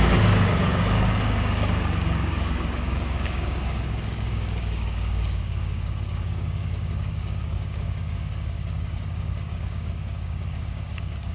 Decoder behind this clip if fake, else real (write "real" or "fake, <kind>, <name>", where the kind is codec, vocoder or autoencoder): fake, codec, DAC